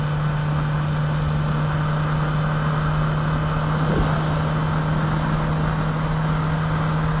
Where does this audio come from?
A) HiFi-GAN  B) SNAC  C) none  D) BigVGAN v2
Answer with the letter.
C